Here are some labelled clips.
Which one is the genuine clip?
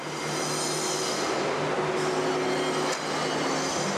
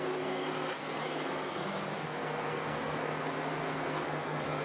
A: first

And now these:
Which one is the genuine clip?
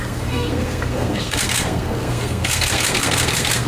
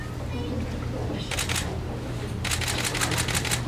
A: second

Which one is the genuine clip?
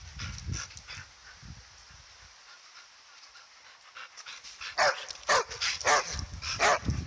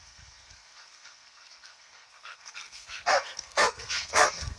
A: first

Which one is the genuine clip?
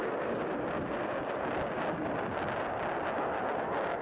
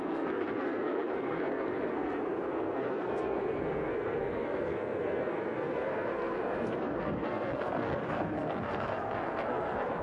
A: first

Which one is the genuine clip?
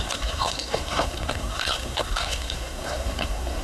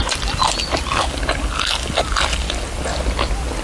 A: second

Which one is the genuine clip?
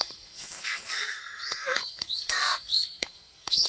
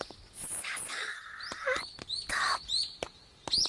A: second